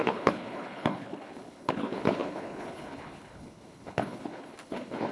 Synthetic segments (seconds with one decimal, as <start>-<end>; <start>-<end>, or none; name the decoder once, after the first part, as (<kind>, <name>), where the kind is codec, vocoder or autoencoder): 0.0-5.1 (codec, HILCodec)